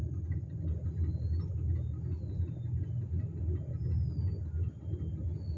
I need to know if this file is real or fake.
real